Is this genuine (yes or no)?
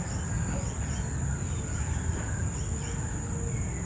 yes